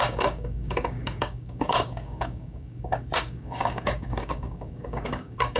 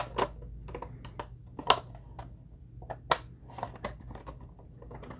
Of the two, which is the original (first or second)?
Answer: second